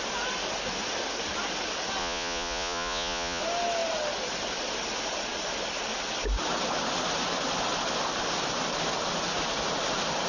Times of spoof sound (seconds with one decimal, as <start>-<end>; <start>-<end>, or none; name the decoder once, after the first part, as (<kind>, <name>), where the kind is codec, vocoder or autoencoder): 2.0-3.4 (vocoder, Vocos)